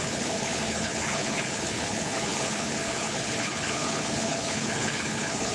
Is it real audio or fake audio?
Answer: fake